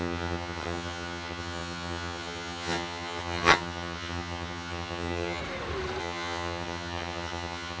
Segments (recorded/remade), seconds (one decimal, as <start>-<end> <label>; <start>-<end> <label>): 0.0-5.4 remade; 5.4-6.0 recorded; 6.0-7.8 remade